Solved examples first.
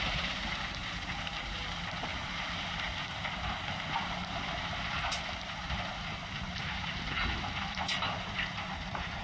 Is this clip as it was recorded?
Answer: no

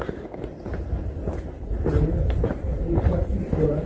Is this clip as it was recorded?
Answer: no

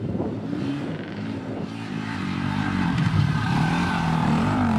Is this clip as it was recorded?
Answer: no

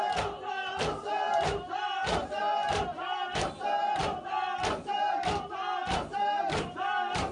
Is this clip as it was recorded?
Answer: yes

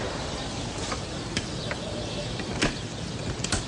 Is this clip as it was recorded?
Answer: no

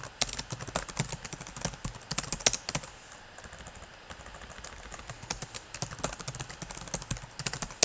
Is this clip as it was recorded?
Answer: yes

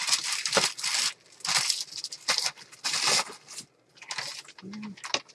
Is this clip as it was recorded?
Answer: yes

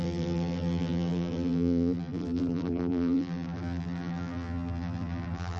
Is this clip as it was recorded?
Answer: no